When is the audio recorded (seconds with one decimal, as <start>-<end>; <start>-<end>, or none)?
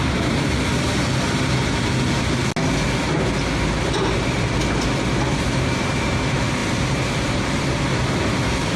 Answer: 0.7-5.4; 8.0-8.8